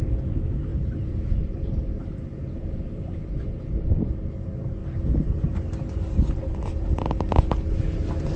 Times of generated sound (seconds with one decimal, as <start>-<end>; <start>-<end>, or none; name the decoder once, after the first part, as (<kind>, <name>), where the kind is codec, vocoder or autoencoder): 0.7-4.3 (vocoder, BigVGAN v2); 4.8-5.7